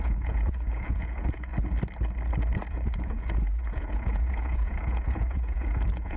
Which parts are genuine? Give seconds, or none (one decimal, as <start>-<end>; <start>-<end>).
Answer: 1.5-2.7